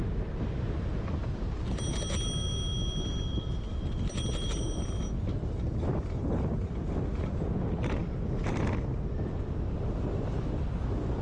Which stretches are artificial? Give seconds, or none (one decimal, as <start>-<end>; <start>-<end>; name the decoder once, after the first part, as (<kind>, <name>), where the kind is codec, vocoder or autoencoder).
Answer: none